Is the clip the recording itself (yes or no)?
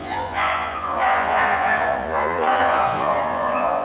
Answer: no